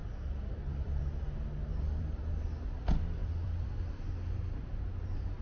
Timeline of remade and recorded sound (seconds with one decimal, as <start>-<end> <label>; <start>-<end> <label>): 0.0-1.0 remade; 1.0-1.7 recorded; 1.7-2.3 remade; 2.3-3.2 recorded; 3.2-4.1 remade; 4.1-5.4 recorded